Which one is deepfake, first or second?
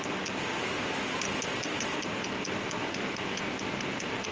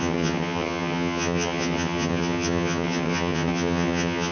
second